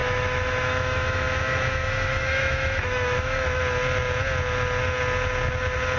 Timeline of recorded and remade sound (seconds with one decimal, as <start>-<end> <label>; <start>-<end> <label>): 0.0-3.6 remade; 3.6-6.0 recorded